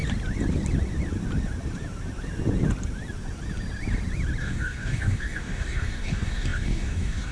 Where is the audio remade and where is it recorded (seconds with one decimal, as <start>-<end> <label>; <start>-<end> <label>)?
0.0-4.4 recorded; 4.4-7.3 remade